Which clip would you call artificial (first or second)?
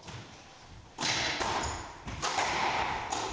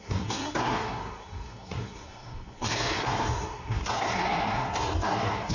second